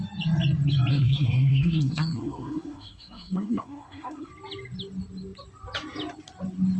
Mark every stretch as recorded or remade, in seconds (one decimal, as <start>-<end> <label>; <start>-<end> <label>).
0.0-0.9 recorded; 0.9-4.3 remade; 4.3-6.8 recorded